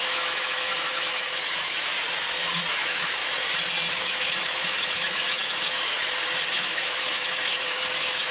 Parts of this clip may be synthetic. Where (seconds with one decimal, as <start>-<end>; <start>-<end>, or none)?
0.0-1.9; 2.7-3.2; 3.9-6.0; 6.5-8.3